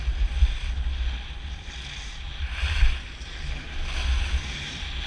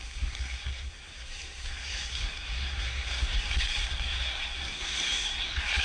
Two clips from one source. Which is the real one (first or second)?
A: first